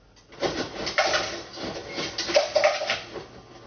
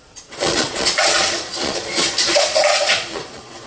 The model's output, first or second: second